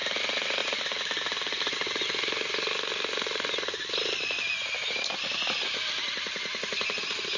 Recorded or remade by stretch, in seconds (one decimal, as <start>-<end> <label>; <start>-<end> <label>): 0.0-7.4 recorded